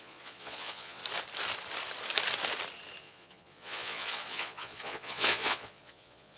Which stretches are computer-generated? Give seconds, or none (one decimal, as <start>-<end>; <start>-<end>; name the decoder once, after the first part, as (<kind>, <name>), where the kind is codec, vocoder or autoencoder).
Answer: 0.0-1.0 (vocoder, Vocos); 3.0-6.4